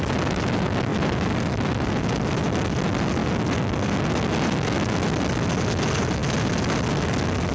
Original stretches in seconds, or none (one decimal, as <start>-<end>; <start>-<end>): 0.0-0.9; 1.9-7.5